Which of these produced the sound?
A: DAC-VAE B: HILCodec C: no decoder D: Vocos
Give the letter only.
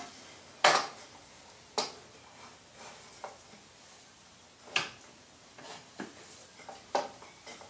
C